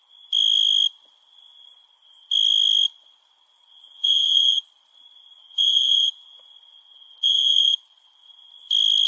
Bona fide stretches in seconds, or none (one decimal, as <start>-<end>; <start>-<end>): 0.0-3.5; 4.6-5.2; 8.5-9.1